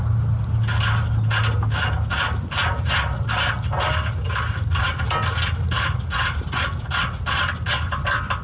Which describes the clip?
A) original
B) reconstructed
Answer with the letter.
A